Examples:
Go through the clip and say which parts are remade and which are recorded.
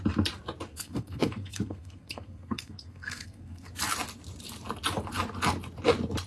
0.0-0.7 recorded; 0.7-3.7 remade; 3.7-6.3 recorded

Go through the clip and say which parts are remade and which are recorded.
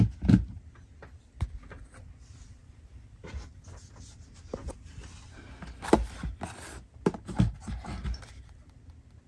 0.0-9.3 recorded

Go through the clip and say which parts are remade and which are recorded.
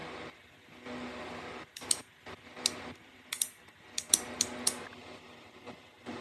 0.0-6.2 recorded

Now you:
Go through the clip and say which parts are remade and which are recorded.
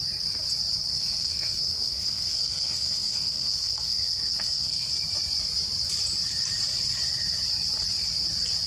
0.0-0.9 recorded; 0.9-4.9 remade; 4.9-8.7 recorded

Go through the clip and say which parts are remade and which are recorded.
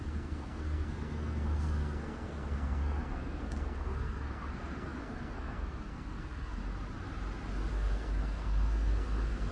0.0-6.6 remade; 6.6-7.7 recorded; 7.7-9.5 remade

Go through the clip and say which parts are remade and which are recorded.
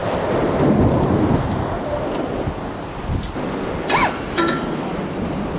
0.0-5.6 recorded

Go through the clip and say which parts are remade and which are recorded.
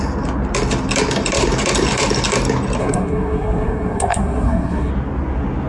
0.0-2.8 recorded; 2.8-4.9 remade; 4.9-5.7 recorded